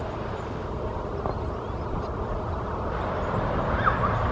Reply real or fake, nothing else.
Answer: real